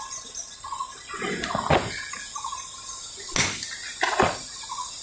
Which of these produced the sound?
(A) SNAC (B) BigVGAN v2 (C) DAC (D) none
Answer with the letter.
D